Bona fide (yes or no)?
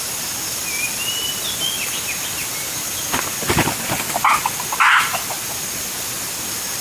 yes